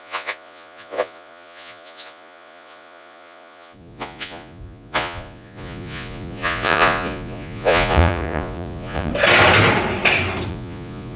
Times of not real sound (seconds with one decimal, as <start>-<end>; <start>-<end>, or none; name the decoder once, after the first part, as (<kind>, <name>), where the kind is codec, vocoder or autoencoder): 0.0-9.1 (vocoder, Vocos); 10.5-11.2